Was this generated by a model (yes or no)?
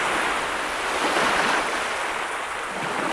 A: no